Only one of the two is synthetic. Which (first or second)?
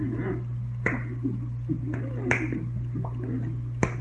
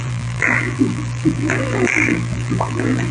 second